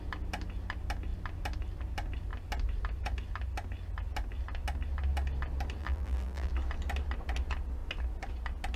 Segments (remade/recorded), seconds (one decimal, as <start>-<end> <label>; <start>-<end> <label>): 0.0-5.8 recorded; 5.8-6.5 remade; 6.5-8.8 recorded

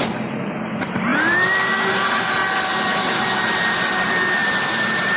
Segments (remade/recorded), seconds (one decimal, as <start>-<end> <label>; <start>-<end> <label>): 0.0-1.1 recorded; 1.1-1.7 remade; 1.7-2.4 recorded; 2.4-3.0 remade; 3.0-4.4 recorded; 4.4-5.2 remade